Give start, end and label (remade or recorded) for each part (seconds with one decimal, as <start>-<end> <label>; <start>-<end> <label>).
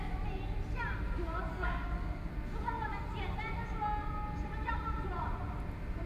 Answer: 0.0-1.5 recorded; 1.5-2.3 remade; 2.3-6.1 recorded